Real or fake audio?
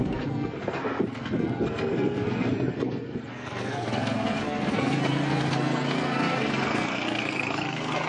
fake